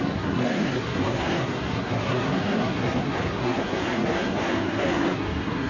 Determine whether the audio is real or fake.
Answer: fake